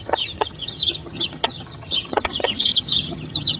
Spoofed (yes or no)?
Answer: yes